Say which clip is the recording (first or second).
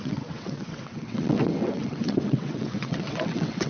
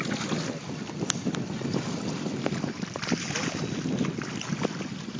second